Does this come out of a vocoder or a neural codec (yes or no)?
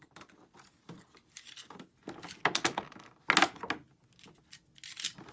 no